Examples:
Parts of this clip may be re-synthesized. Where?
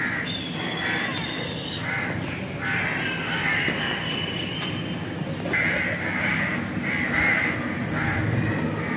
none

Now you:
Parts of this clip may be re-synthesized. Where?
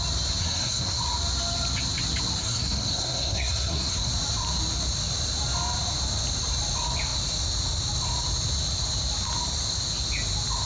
0.4-1.0; 2.4-4.1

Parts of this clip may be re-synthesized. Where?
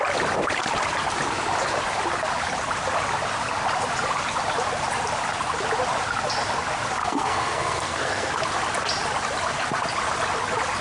7.0-8.3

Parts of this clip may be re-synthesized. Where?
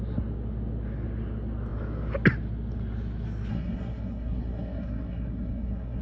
3.5-6.0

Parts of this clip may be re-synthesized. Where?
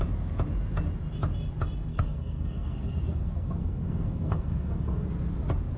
1.9-5.1